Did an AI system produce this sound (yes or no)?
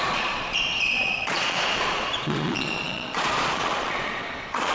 yes